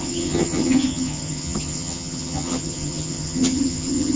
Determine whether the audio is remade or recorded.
remade